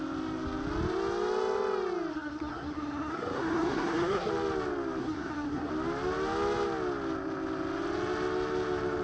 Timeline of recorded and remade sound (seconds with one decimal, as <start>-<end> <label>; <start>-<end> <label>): 0.0-2.1 recorded; 2.1-4.3 remade; 4.3-5.0 recorded; 5.0-5.7 remade; 5.7-9.0 recorded